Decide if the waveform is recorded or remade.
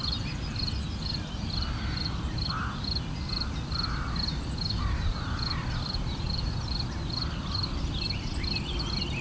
recorded